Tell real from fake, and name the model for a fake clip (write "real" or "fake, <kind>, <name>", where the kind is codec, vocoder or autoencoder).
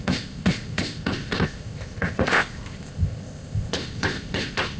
fake, codec, ZipCodec